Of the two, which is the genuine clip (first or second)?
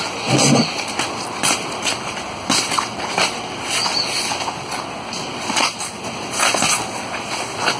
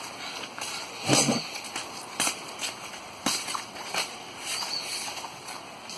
first